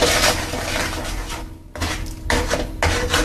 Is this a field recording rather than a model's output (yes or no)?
yes